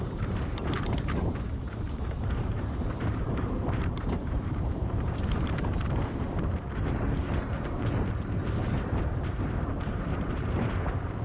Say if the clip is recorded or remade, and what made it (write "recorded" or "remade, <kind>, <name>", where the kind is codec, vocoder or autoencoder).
remade, vocoder, BigVGAN v2